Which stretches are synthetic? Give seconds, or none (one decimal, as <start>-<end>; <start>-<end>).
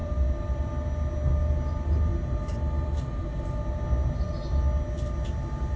0.0-0.7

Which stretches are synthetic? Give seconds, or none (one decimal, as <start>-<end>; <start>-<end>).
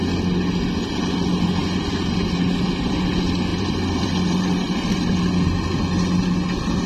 3.5-5.2